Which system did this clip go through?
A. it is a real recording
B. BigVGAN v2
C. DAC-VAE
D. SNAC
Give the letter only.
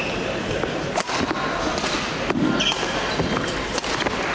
A